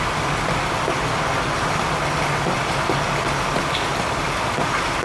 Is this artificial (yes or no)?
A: no